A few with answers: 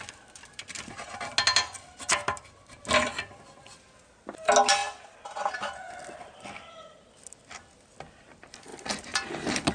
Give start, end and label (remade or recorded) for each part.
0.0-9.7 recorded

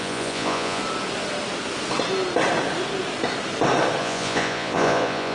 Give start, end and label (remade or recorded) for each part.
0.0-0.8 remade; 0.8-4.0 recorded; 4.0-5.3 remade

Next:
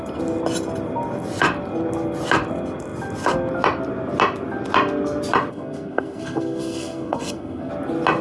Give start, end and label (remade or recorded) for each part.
0.0-5.5 recorded; 5.5-7.7 remade; 7.7-8.2 recorded

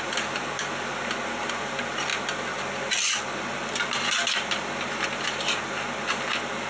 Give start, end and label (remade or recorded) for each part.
0.0-6.7 recorded

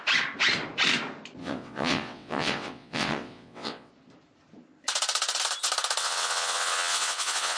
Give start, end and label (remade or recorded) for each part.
0.0-1.4 recorded; 1.4-3.9 remade; 3.9-6.0 recorded; 6.0-7.6 remade